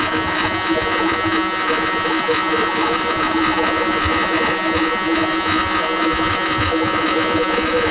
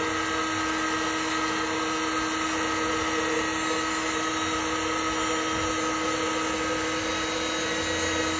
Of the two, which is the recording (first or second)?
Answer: second